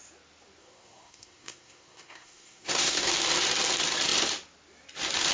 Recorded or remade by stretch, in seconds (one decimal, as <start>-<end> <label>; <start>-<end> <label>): 0.0-0.6 recorded; 0.6-3.1 remade; 3.1-5.3 recorded